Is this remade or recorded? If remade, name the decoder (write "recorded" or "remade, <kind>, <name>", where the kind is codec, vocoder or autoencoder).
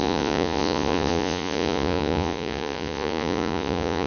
remade, vocoder, Vocos